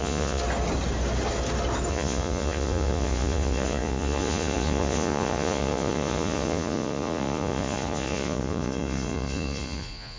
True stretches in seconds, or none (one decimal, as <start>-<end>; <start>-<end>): 0.4-1.9